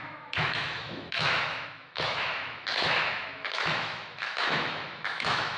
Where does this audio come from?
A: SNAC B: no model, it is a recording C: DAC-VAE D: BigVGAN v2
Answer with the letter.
C